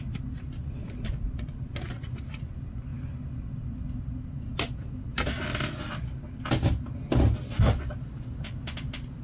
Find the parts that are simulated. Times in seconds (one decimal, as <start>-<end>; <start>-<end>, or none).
none